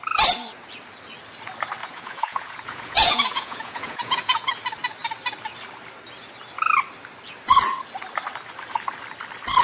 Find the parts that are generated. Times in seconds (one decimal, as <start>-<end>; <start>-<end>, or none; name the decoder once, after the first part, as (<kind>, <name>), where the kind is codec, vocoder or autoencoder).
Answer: 1.8-4.5 (vocoder, Vocos)